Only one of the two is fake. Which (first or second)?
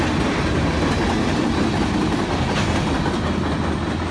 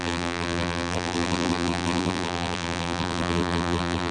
second